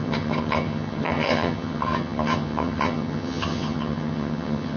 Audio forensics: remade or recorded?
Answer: remade